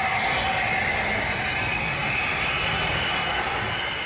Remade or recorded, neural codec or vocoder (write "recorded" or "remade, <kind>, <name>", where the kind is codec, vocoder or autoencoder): recorded